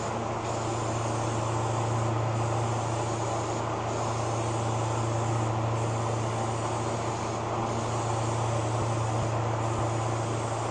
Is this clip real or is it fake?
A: real